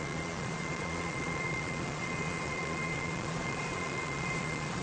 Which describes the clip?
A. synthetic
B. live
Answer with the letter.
A